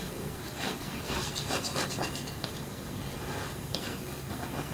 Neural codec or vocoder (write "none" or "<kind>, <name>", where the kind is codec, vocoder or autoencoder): codec, SNAC